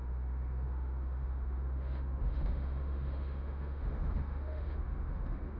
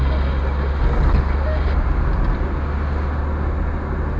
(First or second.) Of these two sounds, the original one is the second